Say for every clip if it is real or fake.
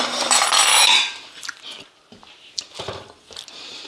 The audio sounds real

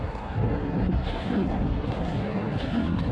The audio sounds fake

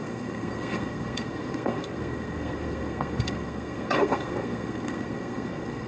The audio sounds fake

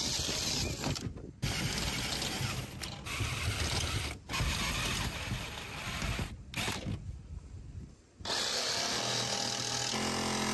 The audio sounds real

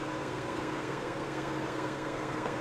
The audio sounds fake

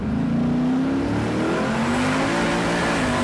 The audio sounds real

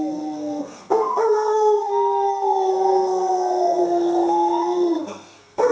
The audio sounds fake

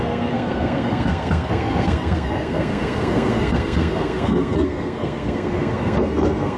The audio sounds fake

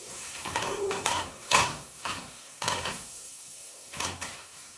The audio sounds fake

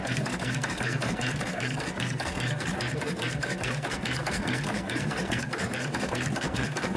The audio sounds fake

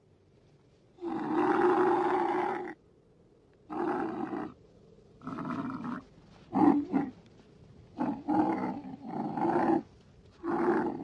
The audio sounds real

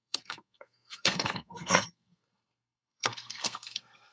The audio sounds fake